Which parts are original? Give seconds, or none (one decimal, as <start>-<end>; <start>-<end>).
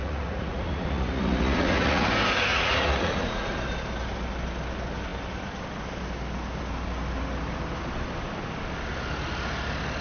2.1-2.5; 3.5-10.0